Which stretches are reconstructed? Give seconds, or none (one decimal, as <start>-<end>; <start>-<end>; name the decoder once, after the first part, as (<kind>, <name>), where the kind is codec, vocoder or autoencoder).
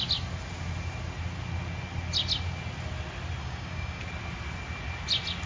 3.4-4.0 (codec, DAC)